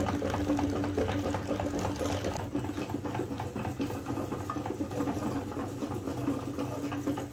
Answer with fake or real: real